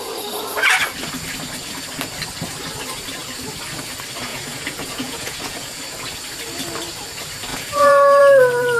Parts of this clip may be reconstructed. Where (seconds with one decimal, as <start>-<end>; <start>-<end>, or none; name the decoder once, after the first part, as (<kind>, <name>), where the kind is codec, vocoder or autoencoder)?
4.3-5.8 (vocoder, Vocos); 7.5-8.2

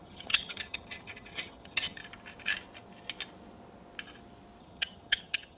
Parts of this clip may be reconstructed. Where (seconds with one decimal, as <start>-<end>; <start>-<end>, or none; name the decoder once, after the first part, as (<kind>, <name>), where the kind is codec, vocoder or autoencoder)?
0.0-2.0 (vocoder, HiFi-GAN); 4.6-5.6

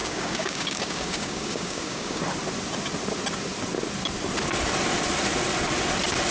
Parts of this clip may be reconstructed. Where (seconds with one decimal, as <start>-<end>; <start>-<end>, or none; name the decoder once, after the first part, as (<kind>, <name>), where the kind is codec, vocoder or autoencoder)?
0.0-2.2 (codec, DAC)

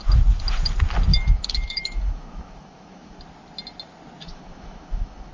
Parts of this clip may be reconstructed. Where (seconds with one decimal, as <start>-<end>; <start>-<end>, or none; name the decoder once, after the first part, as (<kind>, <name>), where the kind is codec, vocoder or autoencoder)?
1.1-3.2 (autoencoder, DAC-VAE); 4.3-5.3

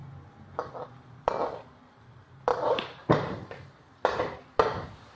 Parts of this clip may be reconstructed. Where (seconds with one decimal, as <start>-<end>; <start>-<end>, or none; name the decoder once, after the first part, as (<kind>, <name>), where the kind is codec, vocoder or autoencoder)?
2.5-4.2 (vocoder, BigVGAN v2)

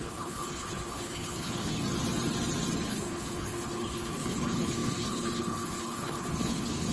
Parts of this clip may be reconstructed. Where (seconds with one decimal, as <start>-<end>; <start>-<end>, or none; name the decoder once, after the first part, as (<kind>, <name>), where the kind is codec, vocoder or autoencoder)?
0.0-1.8 (codec, HILCodec); 2.9-6.9